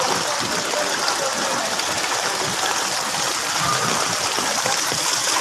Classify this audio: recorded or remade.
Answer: recorded